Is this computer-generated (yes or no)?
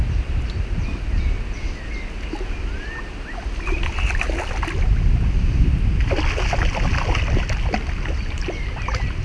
no